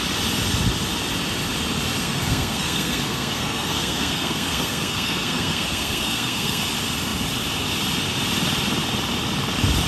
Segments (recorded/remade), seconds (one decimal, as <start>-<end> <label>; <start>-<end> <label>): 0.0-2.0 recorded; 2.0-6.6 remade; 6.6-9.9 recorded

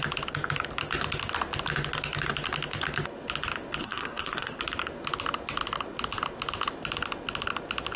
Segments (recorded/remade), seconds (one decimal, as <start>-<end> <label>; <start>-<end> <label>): 0.0-3.8 recorded; 3.8-4.6 remade; 4.6-8.0 recorded

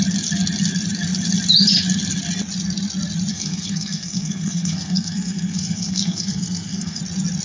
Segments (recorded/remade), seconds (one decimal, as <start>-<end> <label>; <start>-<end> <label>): 0.0-3.3 recorded; 3.3-7.0 remade; 7.0-7.4 recorded

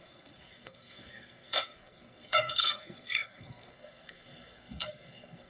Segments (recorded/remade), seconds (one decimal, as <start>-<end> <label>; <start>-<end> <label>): 0.0-5.5 remade